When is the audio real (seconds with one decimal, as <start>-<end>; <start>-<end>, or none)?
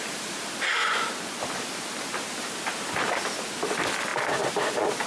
0.0-0.8; 1.4-5.1